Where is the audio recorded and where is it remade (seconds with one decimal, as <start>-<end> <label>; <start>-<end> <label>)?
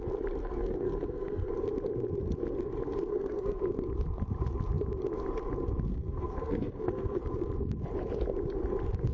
0.0-0.4 recorded; 0.4-1.5 remade; 1.5-3.1 recorded; 3.1-3.6 remade; 3.6-5.9 recorded; 5.9-7.2 remade; 7.2-9.1 recorded